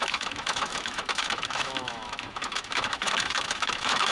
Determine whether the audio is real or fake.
fake